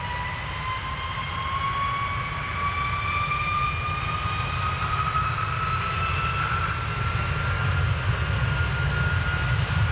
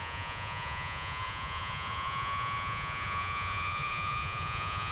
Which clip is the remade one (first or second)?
second